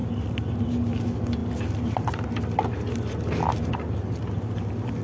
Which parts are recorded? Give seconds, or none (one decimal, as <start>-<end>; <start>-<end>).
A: 0.0-5.0